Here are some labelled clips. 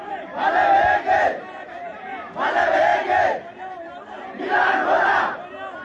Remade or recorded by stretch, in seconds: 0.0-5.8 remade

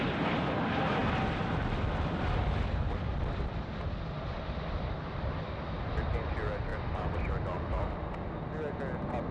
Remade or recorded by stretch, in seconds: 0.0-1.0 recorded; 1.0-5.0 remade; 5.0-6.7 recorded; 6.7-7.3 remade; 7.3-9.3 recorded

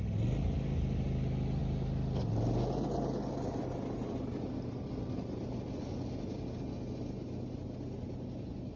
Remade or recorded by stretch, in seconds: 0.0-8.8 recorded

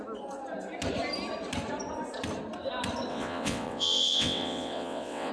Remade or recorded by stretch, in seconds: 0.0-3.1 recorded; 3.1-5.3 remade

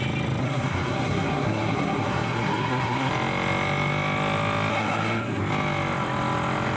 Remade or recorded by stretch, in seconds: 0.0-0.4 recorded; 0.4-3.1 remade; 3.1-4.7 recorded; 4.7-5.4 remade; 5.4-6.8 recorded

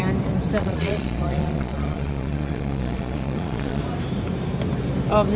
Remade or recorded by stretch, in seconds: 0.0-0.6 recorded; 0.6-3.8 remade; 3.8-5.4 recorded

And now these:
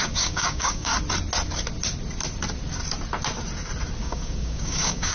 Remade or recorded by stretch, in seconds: 0.0-0.9 remade; 0.9-4.0 recorded; 4.0-5.1 remade

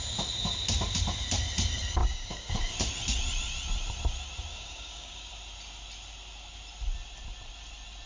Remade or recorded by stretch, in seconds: 0.0-2.0 recorded; 2.0-2.5 remade; 2.5-4.5 recorded; 4.5-5.3 remade; 5.3-8.1 recorded